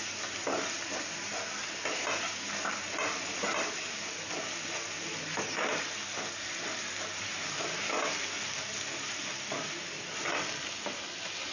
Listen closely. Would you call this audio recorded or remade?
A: recorded